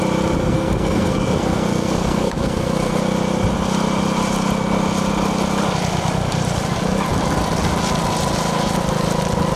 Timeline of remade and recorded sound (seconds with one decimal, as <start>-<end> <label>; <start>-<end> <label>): 0.0-0.4 recorded; 0.4-3.0 remade; 3.0-9.6 recorded